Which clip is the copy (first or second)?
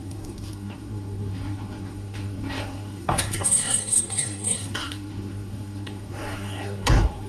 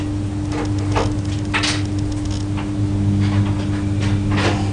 first